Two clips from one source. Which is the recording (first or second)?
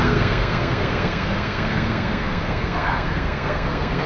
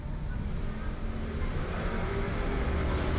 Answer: second